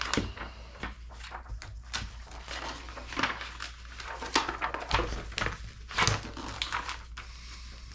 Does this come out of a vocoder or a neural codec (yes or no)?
no